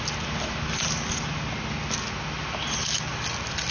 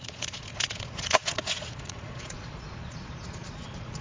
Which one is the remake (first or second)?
second